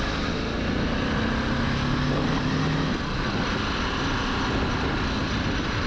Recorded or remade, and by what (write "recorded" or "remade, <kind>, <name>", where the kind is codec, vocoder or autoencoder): recorded